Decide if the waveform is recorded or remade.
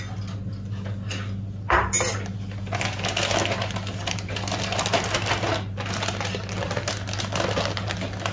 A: recorded